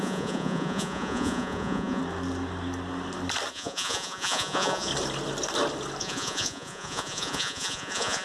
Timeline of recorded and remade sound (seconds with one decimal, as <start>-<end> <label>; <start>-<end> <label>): 0.0-2.0 remade; 2.0-3.5 recorded; 3.5-4.9 remade; 4.9-6.0 recorded; 6.0-8.2 remade